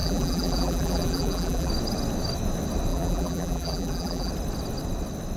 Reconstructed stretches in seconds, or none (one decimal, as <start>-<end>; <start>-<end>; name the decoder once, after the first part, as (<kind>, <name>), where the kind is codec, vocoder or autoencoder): 0.0-1.7 (vocoder, BigVGAN v2); 2.9-4.3

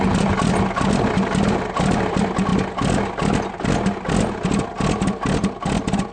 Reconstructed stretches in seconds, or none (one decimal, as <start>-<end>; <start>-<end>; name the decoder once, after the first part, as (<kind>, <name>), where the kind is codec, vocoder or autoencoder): none

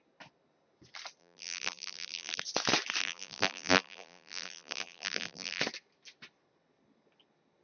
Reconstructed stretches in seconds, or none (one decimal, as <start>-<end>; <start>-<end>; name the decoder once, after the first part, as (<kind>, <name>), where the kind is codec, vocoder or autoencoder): 1.2-2.4 (vocoder, BigVGAN v2); 3.0-5.6

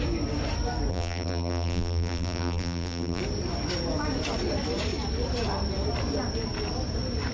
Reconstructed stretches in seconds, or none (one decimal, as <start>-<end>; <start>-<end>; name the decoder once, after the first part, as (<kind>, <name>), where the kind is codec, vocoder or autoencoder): 0.9-3.2 (vocoder, BigVGAN v2)

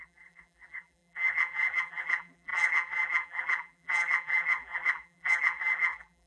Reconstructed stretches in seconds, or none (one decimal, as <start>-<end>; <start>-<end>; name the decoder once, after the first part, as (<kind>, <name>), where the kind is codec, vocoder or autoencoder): 0.0-6.3 (vocoder, BigVGAN v2)

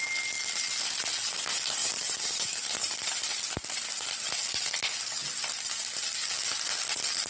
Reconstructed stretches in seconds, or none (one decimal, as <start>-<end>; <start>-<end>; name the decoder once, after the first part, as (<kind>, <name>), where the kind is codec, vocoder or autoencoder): 1.8-3.3 (vocoder, BigVGAN v2)